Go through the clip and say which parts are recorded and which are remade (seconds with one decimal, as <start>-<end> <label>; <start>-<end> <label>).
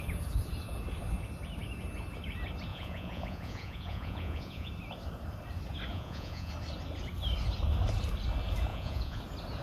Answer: 0.0-2.7 recorded; 2.7-4.7 remade; 4.7-5.9 recorded; 5.9-6.5 remade; 6.5-8.7 recorded; 8.7-9.2 remade; 9.2-9.6 recorded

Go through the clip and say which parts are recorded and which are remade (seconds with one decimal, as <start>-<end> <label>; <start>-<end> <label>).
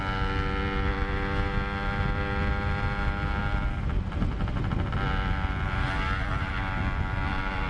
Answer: 0.0-7.7 recorded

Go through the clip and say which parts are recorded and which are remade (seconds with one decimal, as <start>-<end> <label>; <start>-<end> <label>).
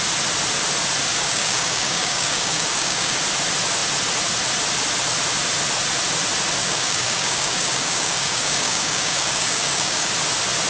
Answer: 0.0-1.1 recorded; 1.1-3.2 remade; 3.2-6.6 recorded; 6.6-10.1 remade; 10.1-10.7 recorded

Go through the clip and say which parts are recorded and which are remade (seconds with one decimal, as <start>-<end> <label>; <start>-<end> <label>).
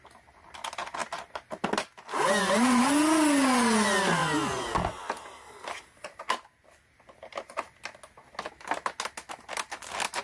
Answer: 0.0-10.2 recorded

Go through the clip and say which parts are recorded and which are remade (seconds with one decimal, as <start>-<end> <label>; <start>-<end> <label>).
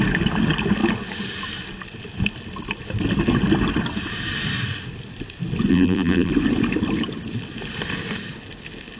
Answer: 0.0-5.7 recorded; 5.7-6.3 remade; 6.3-9.0 recorded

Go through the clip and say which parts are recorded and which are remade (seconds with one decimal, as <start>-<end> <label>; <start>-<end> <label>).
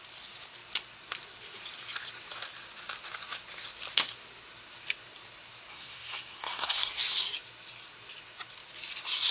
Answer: 0.0-5.7 recorded; 5.7-7.0 remade; 7.0-9.3 recorded